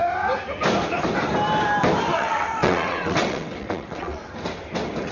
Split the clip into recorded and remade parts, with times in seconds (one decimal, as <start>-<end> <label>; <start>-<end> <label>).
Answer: 0.0-2.1 recorded; 2.1-4.3 remade; 4.3-5.1 recorded